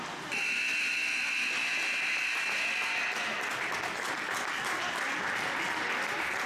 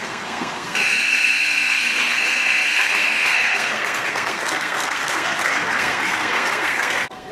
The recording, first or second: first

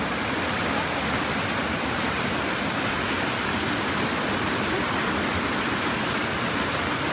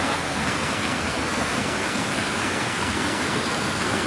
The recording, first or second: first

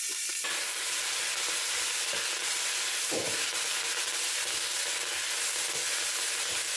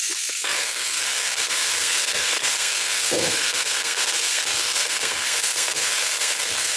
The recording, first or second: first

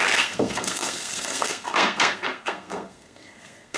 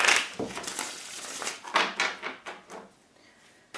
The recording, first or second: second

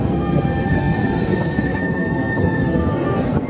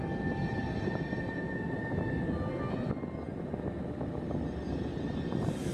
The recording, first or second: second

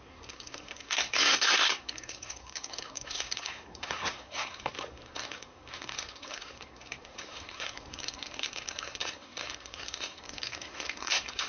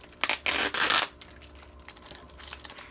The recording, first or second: second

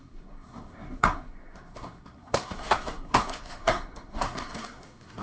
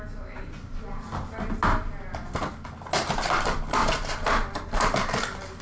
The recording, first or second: second